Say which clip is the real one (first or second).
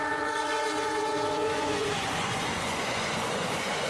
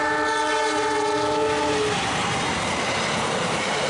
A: second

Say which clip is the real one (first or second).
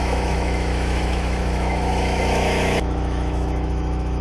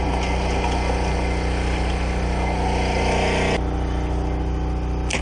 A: second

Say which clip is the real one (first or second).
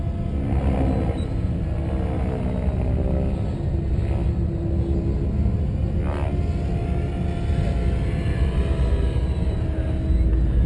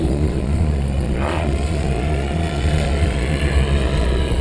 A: first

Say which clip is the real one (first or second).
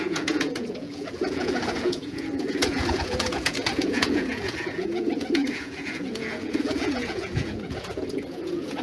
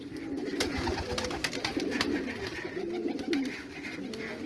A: second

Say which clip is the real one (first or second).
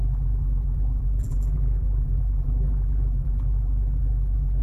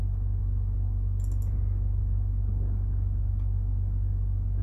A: second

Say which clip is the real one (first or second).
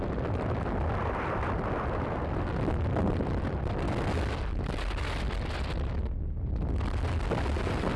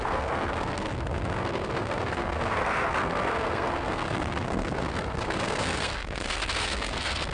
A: first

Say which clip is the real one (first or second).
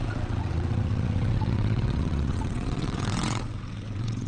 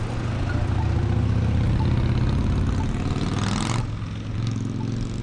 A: second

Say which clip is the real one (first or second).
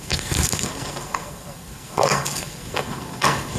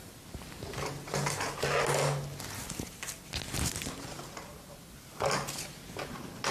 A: second